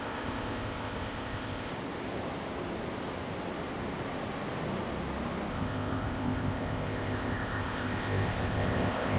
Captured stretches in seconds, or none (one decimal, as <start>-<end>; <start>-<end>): 1.7-5.5